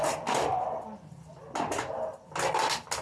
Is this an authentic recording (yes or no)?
yes